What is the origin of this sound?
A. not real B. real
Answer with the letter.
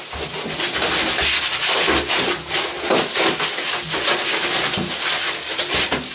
B